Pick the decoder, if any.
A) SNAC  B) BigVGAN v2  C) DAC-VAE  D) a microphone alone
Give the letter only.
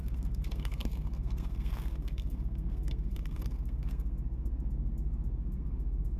A